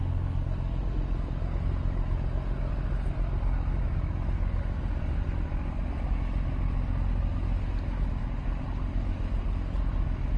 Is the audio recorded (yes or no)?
yes